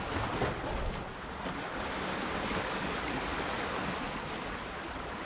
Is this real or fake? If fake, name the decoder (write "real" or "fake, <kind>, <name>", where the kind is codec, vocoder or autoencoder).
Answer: real